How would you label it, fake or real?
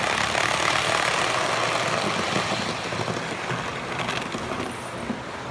real